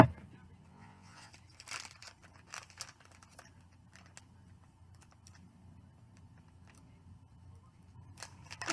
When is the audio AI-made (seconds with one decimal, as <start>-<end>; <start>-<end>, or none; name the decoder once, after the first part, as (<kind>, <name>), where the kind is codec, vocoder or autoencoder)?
0.7-1.3 (vocoder, Vocos)